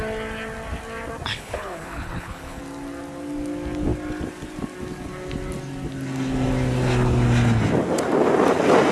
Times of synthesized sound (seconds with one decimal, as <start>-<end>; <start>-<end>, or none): 1.3-2.6